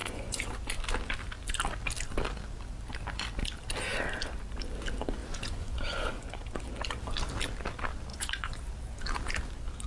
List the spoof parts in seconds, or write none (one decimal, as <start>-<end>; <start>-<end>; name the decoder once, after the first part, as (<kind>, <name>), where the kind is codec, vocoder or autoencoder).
0.0-0.5 (vocoder, Vocos); 5.2-6.4; 8.1-8.6